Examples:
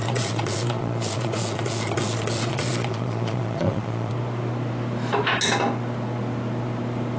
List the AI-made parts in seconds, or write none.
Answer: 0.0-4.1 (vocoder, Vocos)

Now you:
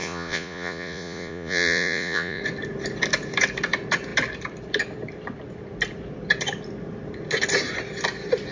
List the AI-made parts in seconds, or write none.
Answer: 0.0-2.4 (vocoder, Vocos)

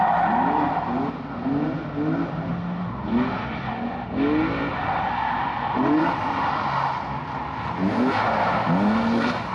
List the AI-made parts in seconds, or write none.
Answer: none

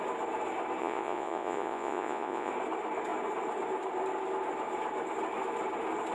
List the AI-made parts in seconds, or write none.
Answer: 0.8-2.5 (vocoder, Vocos)

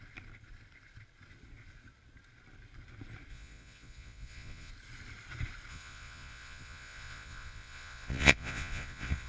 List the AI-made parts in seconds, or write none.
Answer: 3.3-4.7 (vocoder, Vocos); 5.7-9.3

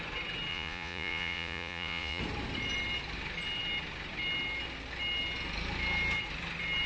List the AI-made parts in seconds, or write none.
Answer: 0.5-2.2 (vocoder, Vocos)

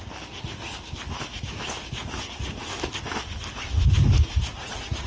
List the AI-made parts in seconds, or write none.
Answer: 4.2-5.1 (vocoder, Vocos)